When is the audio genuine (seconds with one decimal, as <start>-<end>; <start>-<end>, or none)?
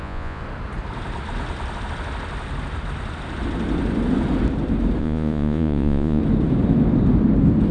0.4-5.0; 6.2-7.7